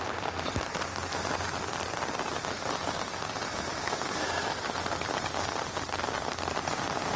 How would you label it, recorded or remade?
recorded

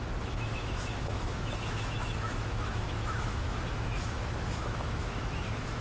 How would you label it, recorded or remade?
remade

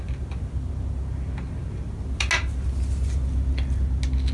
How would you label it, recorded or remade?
recorded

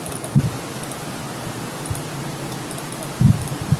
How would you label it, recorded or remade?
recorded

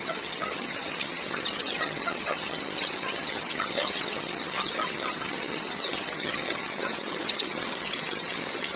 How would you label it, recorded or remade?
remade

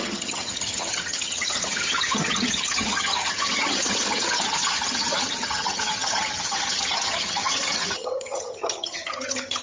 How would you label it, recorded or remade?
remade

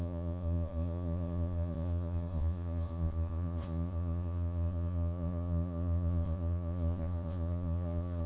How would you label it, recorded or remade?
remade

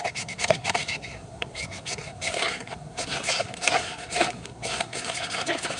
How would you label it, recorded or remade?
remade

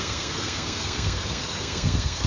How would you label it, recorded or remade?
remade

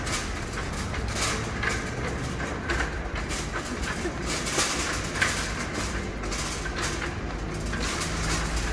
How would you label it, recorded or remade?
recorded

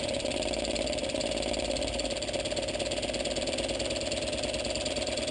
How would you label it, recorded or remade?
remade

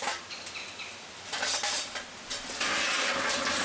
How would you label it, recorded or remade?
recorded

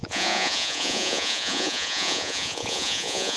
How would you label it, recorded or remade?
remade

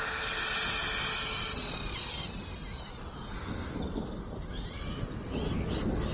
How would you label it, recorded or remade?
recorded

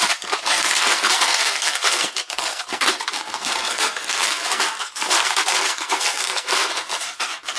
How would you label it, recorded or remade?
remade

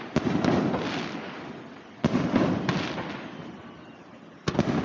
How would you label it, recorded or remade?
recorded